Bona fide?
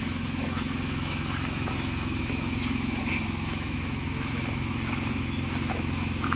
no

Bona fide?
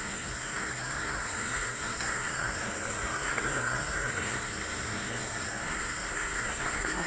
no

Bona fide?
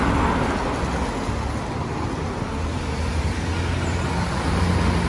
yes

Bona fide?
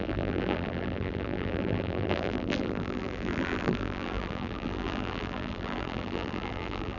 no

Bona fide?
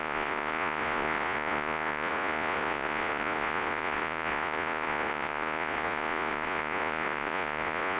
no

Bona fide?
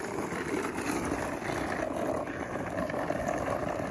yes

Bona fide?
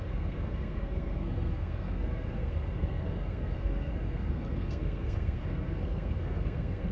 no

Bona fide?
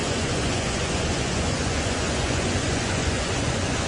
no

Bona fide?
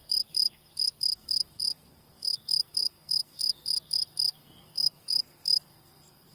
no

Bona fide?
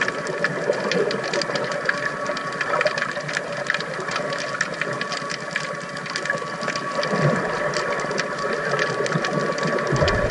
yes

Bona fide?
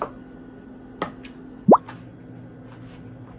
yes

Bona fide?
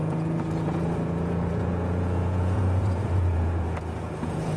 no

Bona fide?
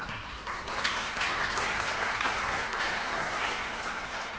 no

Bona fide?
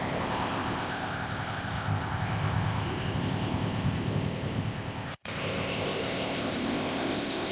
no